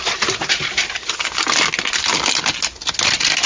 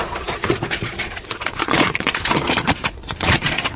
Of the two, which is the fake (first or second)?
second